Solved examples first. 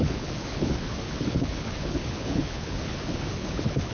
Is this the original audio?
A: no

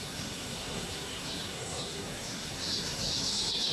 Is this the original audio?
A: no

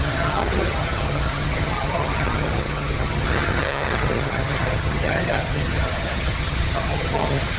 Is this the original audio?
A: no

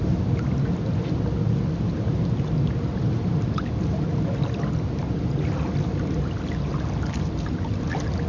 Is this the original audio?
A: yes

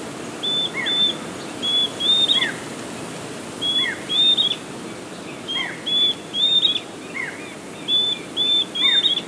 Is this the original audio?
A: yes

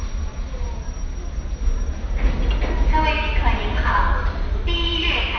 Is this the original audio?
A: yes